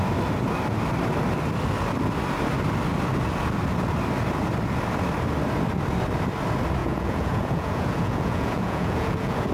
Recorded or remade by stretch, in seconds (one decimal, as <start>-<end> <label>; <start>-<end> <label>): 0.0-6.8 recorded; 6.8-9.5 remade